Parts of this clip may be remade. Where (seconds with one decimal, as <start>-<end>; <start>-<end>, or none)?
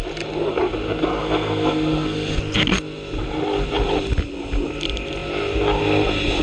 1.2-2.4